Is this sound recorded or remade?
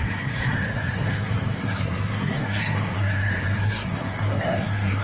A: remade